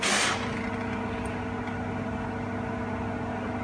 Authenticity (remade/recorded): recorded